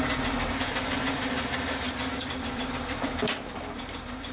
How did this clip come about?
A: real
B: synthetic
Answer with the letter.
B